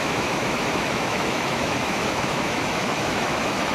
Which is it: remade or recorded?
remade